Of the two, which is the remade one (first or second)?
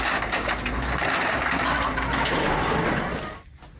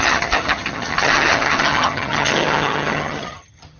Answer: second